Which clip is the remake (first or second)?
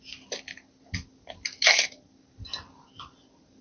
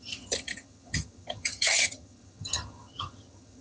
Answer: second